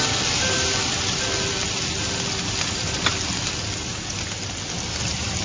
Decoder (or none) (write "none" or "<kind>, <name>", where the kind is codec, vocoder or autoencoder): none